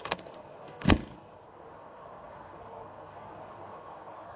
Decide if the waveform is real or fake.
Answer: fake